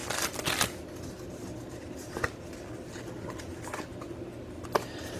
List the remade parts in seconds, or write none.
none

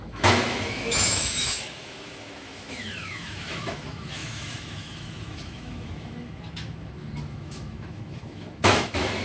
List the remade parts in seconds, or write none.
0.0-9.2

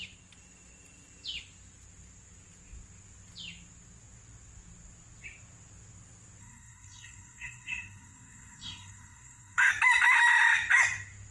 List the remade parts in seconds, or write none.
6.4-9.7